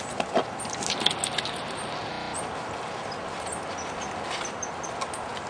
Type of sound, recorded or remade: recorded